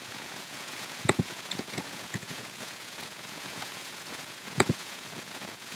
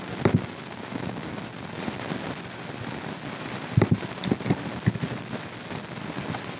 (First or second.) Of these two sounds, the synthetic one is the first